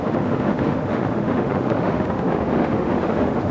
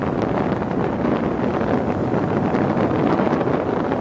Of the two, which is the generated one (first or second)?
first